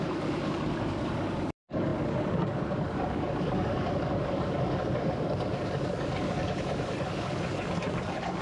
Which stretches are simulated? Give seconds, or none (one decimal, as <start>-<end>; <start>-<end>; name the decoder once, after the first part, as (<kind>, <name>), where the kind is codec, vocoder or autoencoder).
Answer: 0.0-8.4 (codec, DAC)